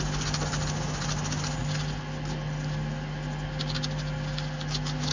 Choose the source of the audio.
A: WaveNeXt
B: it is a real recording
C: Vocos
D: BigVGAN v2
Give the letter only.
B